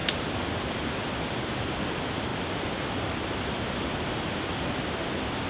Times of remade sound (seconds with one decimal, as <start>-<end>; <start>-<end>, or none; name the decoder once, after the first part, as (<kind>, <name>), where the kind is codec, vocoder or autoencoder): none